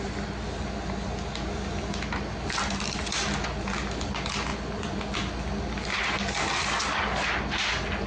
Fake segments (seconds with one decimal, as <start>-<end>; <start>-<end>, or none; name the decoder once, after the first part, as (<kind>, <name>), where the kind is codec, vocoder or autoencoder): none